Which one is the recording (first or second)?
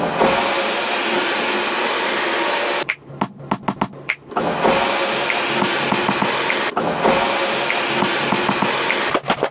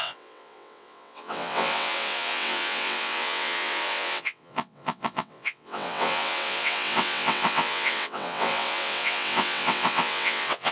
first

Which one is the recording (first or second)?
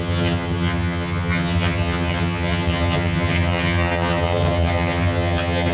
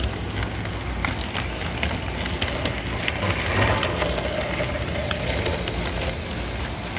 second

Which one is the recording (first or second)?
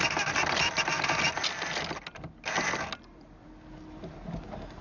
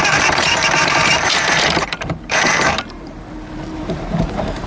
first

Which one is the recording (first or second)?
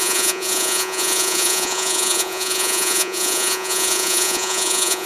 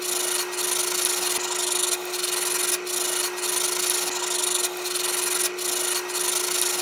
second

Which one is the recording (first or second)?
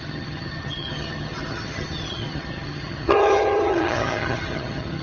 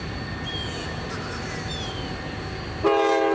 second